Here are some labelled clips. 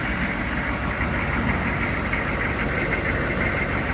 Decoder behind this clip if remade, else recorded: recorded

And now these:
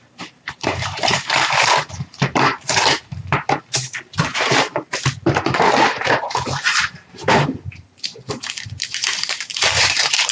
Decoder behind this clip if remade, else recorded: remade, vocoder, BigVGAN v2